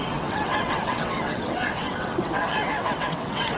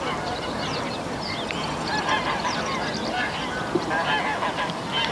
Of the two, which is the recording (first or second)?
second